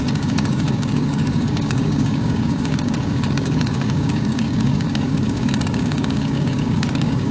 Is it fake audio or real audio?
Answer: fake